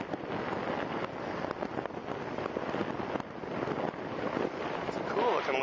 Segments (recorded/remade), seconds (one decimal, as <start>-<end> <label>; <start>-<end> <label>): 0.0-5.6 recorded